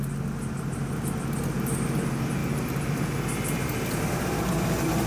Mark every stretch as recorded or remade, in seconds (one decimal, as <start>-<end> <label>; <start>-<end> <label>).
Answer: 0.0-5.1 recorded